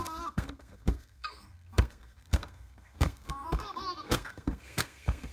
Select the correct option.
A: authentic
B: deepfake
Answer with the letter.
B